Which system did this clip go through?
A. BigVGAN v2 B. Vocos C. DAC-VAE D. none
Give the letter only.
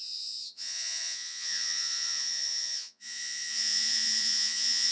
B